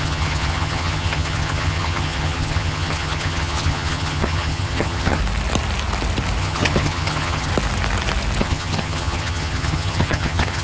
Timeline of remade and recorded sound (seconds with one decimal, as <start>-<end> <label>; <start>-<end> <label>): 0.0-5.2 remade; 5.2-6.4 recorded; 6.4-7.5 remade; 7.5-8.4 recorded; 8.4-10.6 remade